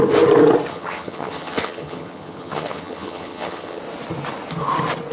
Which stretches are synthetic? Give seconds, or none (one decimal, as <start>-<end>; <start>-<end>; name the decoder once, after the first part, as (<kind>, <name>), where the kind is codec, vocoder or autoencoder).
0.7-3.8 (vocoder, HiFi-GAN)